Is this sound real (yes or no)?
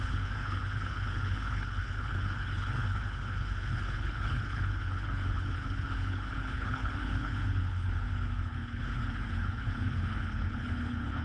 no